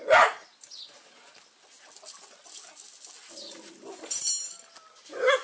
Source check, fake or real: real